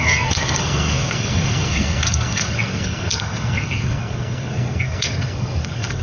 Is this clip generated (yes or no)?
yes